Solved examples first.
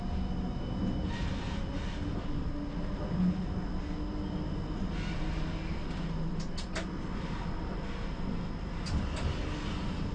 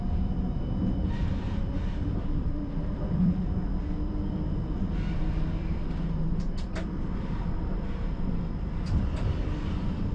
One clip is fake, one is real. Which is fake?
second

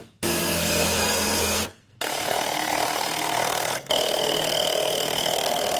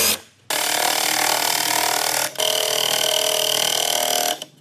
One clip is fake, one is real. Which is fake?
first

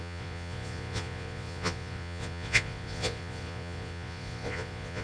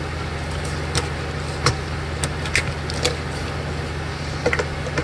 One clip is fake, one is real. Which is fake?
first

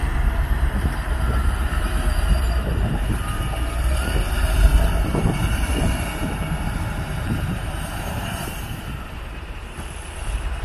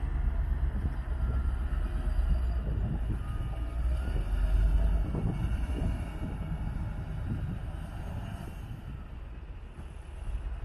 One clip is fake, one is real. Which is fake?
first